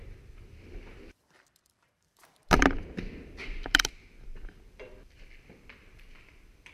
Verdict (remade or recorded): remade